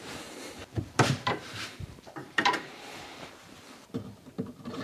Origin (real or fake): fake